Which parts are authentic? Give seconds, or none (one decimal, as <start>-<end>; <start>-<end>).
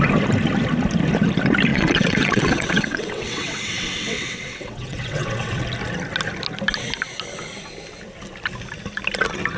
0.0-1.7; 5.6-9.6